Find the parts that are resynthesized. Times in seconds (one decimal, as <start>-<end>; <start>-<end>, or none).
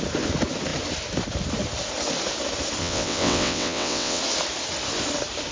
2.8-4.2